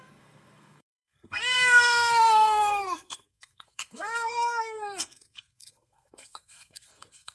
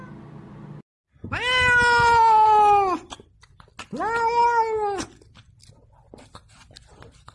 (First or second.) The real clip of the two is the second